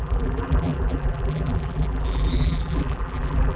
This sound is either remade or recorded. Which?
remade